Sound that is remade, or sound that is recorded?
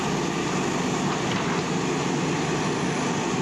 recorded